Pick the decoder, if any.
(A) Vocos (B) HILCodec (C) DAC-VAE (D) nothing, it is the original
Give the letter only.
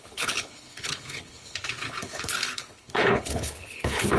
B